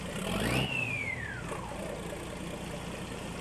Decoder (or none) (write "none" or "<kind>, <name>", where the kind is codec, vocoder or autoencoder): none